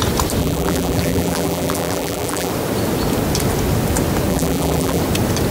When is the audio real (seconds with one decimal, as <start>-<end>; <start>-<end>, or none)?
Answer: 0.0-0.4; 2.5-4.3; 5.0-5.5